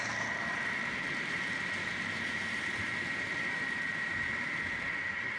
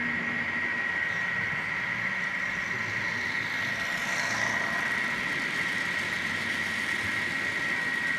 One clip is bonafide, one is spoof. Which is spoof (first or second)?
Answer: first